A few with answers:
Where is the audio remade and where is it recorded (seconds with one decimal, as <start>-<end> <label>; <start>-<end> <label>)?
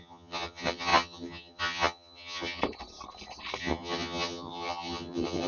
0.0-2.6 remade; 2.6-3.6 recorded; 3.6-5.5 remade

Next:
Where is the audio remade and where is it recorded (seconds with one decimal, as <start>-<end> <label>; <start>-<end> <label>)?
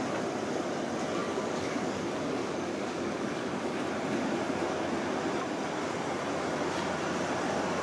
0.0-1.2 recorded; 1.2-3.8 remade; 3.8-7.8 recorded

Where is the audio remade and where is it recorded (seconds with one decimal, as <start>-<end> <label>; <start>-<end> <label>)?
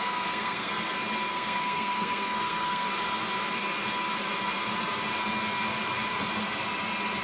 0.0-0.7 remade; 0.7-1.3 recorded; 1.3-2.9 remade; 2.9-7.2 recorded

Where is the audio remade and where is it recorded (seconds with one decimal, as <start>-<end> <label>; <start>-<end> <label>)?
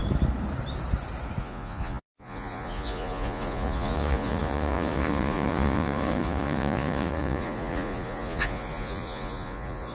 0.0-1.4 recorded; 1.4-9.9 remade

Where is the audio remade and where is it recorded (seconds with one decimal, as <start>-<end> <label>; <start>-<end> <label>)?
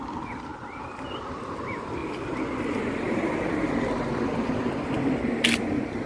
0.0-6.1 recorded